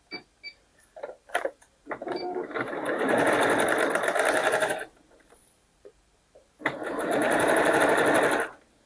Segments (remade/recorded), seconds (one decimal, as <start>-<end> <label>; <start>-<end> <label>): 0.0-0.7 recorded; 0.7-3.3 remade; 3.3-4.4 recorded; 4.4-7.8 remade; 7.8-8.9 recorded